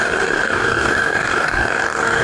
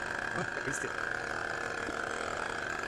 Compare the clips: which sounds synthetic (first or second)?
first